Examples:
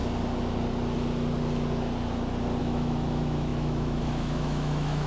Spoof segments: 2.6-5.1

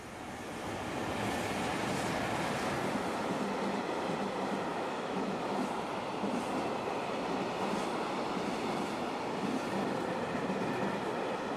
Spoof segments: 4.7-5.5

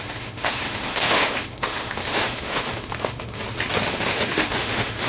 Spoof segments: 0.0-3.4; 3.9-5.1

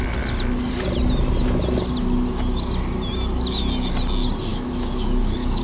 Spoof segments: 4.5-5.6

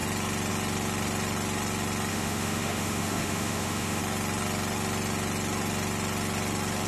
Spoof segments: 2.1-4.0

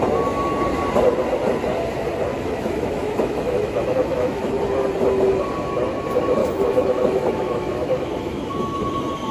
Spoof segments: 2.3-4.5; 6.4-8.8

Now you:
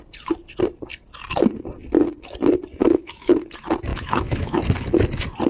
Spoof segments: 2.8-3.3; 3.9-4.6

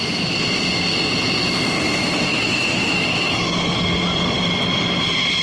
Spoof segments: 2.0-3.5